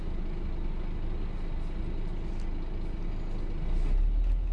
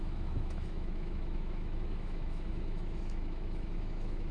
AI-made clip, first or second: second